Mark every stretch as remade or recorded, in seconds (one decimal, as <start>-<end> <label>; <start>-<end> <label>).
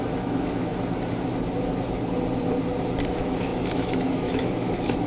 0.0-0.7 remade; 0.7-3.1 recorded; 3.1-5.1 remade